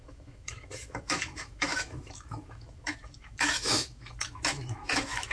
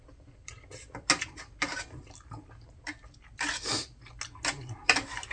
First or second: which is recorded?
second